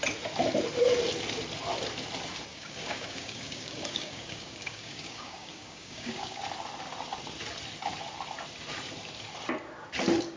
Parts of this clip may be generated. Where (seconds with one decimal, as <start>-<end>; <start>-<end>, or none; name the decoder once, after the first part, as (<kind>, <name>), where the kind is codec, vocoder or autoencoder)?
2.5-6.4 (codec, DAC)